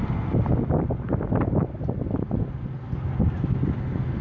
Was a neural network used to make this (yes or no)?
no